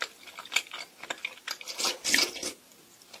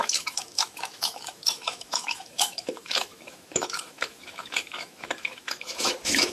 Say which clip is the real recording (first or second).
first